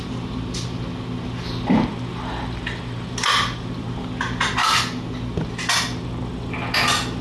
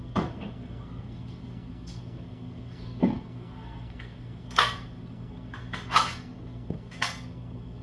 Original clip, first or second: first